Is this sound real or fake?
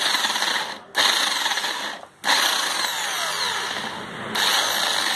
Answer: real